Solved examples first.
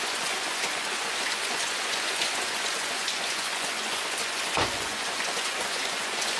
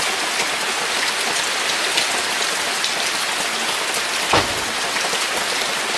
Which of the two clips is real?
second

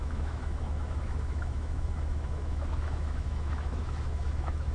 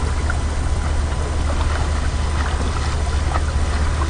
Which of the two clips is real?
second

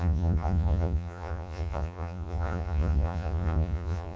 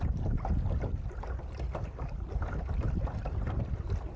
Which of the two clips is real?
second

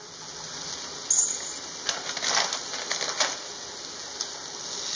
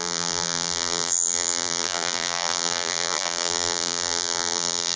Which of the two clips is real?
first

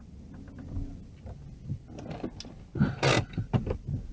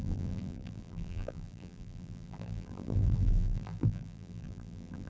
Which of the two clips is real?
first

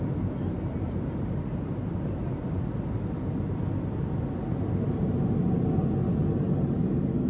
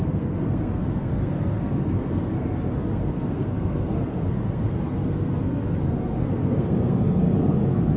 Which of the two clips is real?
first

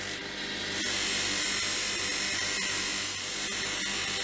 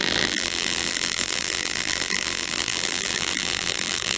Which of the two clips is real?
first